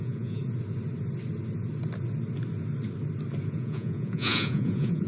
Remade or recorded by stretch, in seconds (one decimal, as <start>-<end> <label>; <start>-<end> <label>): 0.0-0.4 remade; 0.4-3.5 recorded; 3.5-5.1 remade